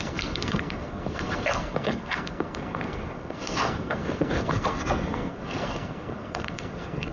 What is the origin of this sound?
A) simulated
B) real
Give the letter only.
A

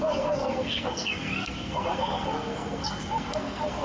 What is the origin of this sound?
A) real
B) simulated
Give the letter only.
B